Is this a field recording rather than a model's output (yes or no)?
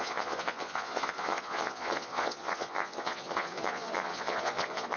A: no